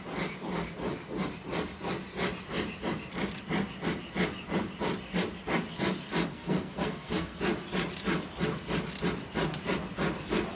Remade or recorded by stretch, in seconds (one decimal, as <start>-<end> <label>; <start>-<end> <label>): 0.0-6.3 recorded; 6.3-7.4 remade; 7.4-10.6 recorded